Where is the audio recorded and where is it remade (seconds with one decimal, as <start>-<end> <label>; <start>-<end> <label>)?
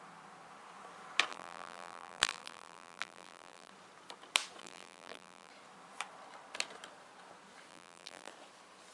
0.0-1.3 recorded; 1.3-3.7 remade; 3.7-4.6 recorded; 4.6-5.5 remade; 5.5-7.7 recorded; 7.7-8.3 remade; 8.3-8.9 recorded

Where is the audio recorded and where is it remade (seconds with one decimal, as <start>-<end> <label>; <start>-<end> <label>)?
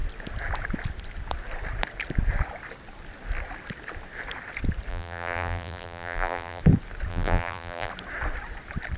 0.0-4.9 recorded; 4.9-6.6 remade; 6.6-7.1 recorded; 7.1-7.9 remade; 7.9-9.0 recorded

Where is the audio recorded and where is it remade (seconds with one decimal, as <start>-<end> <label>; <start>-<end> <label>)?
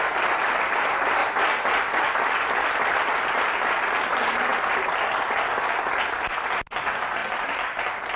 0.0-7.2 recorded; 7.2-8.2 remade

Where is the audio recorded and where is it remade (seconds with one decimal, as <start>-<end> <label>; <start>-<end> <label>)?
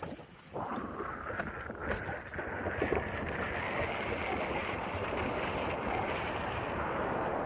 0.0-0.7 recorded; 0.7-1.4 remade; 1.4-4.6 recorded; 4.6-6.6 remade; 6.6-7.5 recorded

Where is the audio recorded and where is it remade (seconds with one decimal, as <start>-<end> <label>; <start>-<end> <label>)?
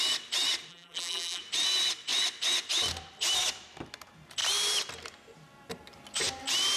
0.0-0.7 recorded; 0.7-1.4 remade; 1.4-6.8 recorded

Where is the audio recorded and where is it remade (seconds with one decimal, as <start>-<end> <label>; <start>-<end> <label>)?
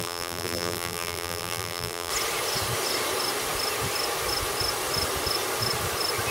0.0-2.1 remade; 2.1-6.3 recorded